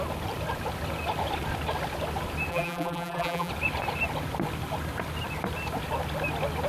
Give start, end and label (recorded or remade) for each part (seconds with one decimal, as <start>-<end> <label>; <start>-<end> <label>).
0.0-2.5 recorded; 2.5-3.5 remade; 3.5-6.7 recorded